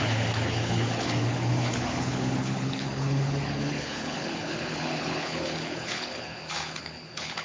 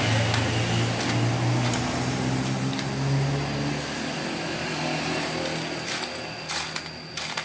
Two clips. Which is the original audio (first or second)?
second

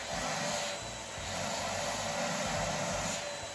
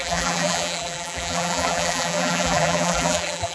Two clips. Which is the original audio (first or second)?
first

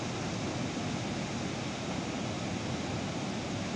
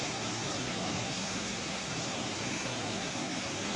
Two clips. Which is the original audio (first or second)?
first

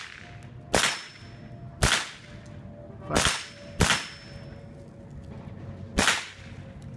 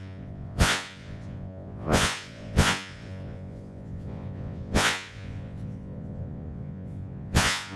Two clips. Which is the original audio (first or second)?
first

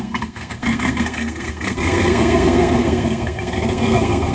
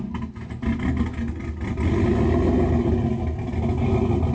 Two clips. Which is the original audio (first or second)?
second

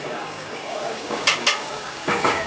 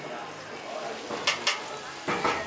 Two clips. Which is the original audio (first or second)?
second